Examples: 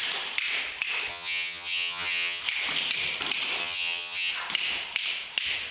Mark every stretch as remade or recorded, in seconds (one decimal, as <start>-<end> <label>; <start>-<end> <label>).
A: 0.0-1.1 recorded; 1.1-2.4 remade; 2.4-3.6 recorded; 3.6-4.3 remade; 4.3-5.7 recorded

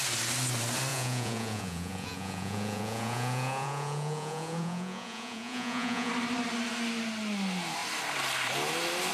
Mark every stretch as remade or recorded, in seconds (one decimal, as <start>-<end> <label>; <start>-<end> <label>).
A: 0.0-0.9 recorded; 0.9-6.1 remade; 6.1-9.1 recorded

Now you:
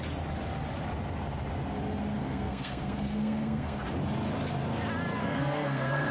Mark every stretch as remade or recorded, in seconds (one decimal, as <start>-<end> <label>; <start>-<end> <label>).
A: 0.0-2.2 recorded; 2.2-3.8 remade; 3.8-5.2 recorded; 5.2-6.1 remade

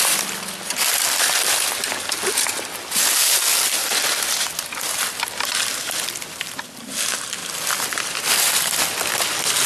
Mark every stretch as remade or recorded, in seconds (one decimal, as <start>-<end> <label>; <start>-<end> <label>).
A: 0.0-3.8 recorded; 3.8-6.9 remade; 6.9-7.4 recorded; 7.4-8.8 remade; 8.8-9.7 recorded